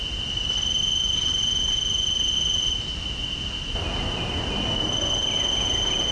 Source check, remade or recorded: recorded